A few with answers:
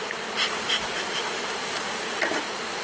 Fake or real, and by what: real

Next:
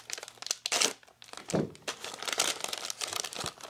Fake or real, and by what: real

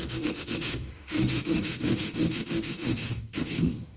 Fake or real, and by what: fake, autoencoder, DAC-VAE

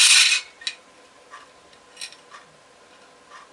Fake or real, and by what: real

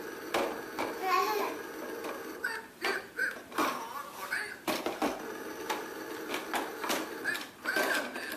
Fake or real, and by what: real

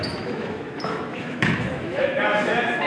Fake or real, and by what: fake, autoencoder, DAC-VAE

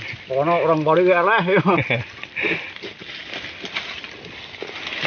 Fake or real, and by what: real